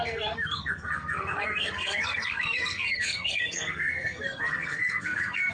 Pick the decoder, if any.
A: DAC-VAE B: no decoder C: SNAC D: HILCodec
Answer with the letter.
C